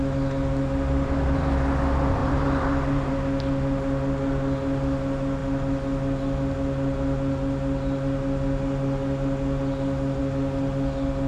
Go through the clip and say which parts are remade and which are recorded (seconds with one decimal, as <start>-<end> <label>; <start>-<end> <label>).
0.0-2.2 recorded; 2.2-3.1 remade; 3.1-11.3 recorded